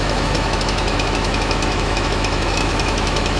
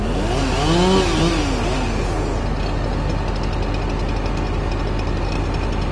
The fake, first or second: first